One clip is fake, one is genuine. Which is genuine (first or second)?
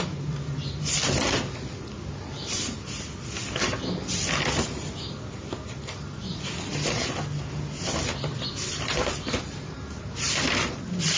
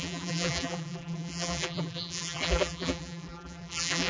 first